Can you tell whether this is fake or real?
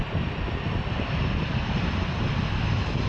real